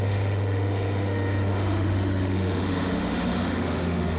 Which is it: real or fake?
fake